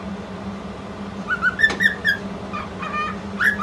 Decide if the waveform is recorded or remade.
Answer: recorded